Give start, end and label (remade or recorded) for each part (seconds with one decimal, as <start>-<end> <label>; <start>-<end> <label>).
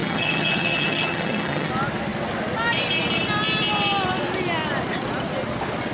0.0-1.7 remade; 1.7-5.9 recorded